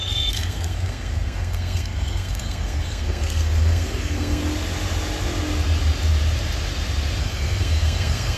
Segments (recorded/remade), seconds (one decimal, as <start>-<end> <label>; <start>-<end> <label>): 0.0-4.4 remade; 4.4-7.2 recorded; 7.2-8.4 remade